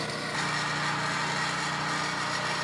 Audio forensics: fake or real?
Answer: real